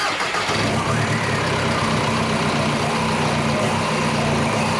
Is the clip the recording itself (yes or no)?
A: yes